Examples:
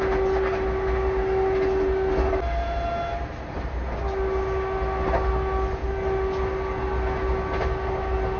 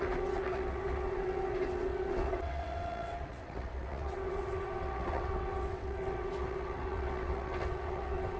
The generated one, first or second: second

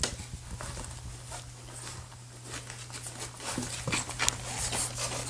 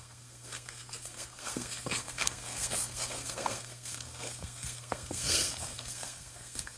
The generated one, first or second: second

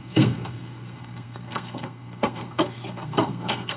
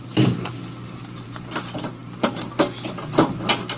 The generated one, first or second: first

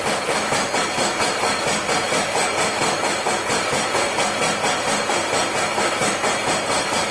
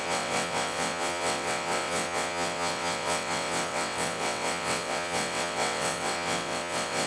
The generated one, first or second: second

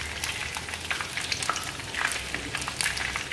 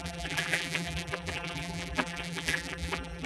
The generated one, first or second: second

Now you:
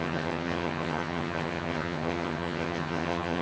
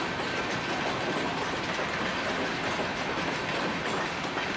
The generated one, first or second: first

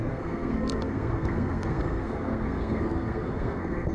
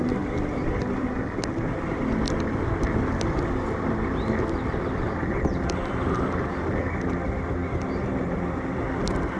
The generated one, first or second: first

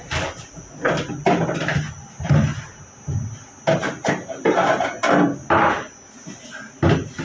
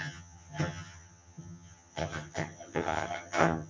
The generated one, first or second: second